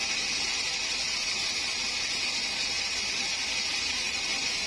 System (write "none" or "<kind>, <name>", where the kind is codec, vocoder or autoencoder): none